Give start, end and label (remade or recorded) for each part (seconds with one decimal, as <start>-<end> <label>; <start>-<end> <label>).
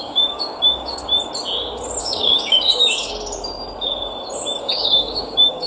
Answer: 0.0-1.0 remade; 1.0-2.0 recorded; 2.0-3.1 remade; 3.1-4.6 recorded; 4.6-5.7 remade